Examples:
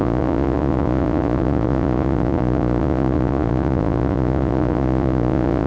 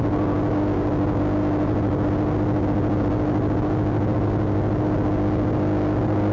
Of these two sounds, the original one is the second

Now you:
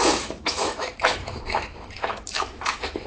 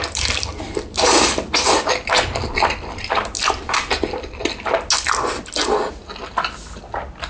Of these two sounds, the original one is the second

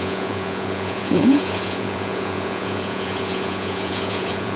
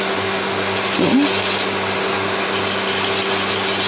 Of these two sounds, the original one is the second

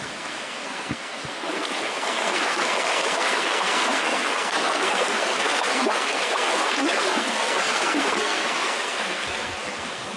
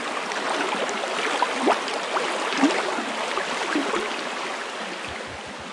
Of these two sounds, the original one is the second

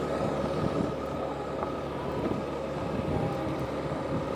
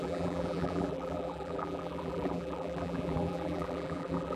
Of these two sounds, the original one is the first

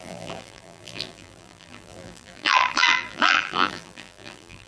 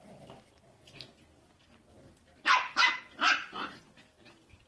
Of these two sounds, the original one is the second